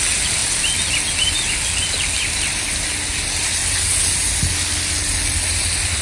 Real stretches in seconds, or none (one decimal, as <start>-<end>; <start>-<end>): 0.0-6.0